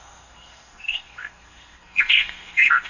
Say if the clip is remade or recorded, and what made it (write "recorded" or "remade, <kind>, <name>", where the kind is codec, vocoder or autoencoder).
remade, codec, SNAC